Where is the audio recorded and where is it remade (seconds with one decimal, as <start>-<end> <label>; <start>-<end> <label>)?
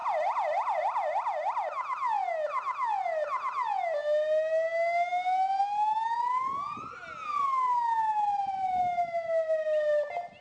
0.0-0.8 remade; 0.8-10.4 recorded